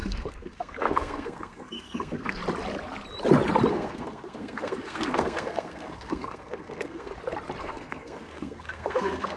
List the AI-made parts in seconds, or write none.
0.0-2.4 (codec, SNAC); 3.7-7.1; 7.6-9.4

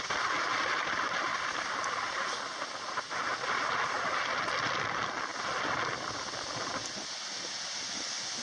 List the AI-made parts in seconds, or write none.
0.0-1.3 (vocoder, BigVGAN v2); 4.4-5.3; 7.4-8.4

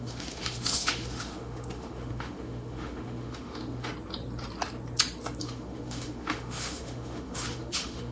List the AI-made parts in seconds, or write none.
0.0-3.9 (autoencoder, DAC-VAE); 5.4-8.1

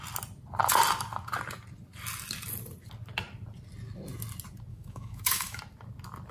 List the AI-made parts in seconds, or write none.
4.7-5.6 (autoencoder, DAC-VAE)